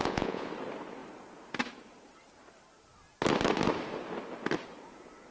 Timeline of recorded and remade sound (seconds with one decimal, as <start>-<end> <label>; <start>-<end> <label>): 0.0-0.5 remade; 0.5-5.3 recorded